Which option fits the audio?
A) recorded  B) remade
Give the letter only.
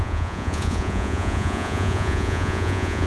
B